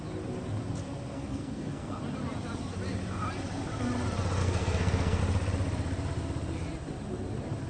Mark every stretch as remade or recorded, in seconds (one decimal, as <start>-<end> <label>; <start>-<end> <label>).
0.0-1.1 recorded; 1.1-2.0 remade; 2.0-4.4 recorded; 4.4-5.2 remade; 5.2-7.7 recorded